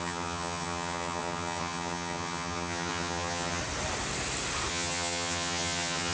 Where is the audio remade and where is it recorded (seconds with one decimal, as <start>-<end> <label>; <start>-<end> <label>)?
0.0-3.6 remade; 3.6-4.7 recorded; 4.7-6.1 remade